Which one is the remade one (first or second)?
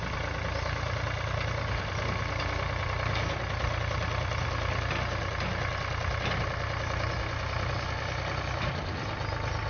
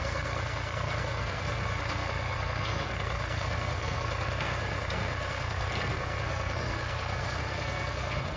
second